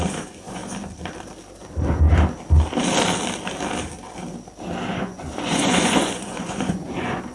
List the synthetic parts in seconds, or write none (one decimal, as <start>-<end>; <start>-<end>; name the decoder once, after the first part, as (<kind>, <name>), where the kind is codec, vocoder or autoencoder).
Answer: 0.0-0.6 (vocoder, Vocos); 5.0-7.3